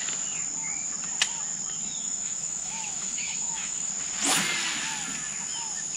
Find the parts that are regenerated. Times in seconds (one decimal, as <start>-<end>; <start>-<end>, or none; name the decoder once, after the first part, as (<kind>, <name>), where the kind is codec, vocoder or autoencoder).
2.0-3.9 (autoencoder, DAC-VAE)